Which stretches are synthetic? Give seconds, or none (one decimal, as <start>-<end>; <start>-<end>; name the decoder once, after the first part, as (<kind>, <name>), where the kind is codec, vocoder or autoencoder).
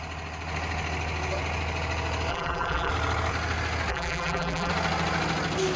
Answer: 2.3-2.9 (vocoder, BigVGAN v2); 3.9-4.7